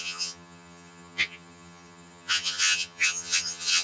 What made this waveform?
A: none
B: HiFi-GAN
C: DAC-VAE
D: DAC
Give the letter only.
B